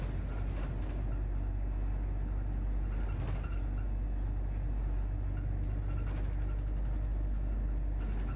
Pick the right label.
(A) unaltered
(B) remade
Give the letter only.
A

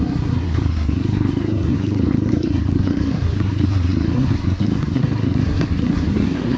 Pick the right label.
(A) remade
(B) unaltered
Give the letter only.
A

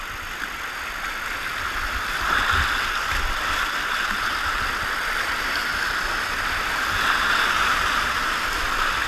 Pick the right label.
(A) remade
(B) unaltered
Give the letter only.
B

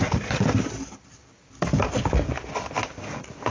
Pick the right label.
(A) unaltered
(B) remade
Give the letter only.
A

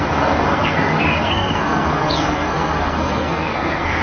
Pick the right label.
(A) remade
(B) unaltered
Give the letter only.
A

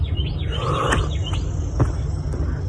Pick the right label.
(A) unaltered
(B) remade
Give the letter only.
A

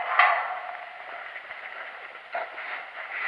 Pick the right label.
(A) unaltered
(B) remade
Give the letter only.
A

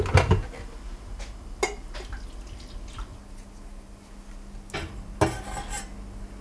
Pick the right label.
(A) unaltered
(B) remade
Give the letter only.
A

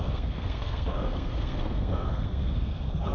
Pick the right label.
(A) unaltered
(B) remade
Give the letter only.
B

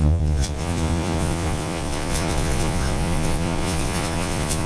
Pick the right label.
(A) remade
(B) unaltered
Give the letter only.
A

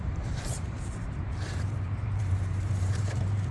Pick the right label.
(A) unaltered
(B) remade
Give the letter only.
B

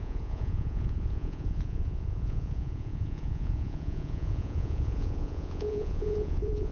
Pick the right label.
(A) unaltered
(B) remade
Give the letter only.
B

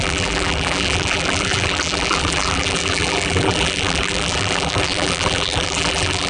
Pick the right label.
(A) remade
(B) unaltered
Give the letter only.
A